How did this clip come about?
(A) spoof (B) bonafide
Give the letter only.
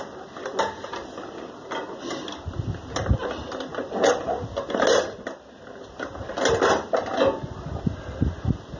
B